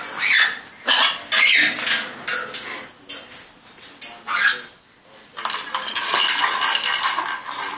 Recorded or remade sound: recorded